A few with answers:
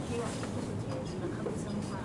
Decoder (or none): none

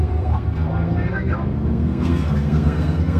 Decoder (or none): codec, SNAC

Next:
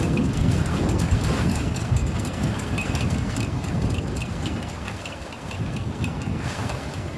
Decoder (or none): codec, SNAC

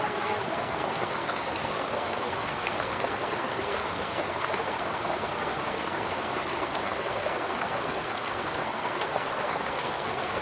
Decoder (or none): codec, SNAC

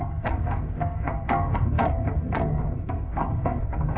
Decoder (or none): codec, SNAC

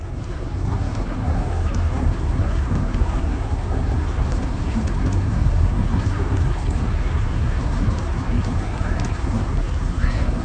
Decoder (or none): codec, SNAC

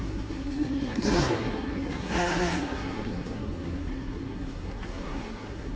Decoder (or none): codec, SNAC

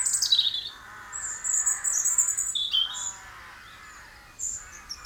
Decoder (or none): none